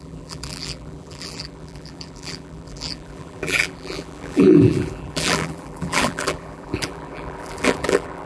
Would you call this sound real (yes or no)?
no